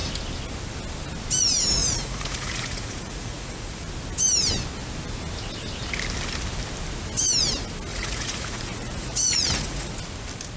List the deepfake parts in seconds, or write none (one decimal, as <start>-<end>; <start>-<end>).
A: 1.8-3.9; 7.9-9.9